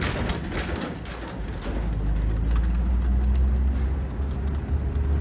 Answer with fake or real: real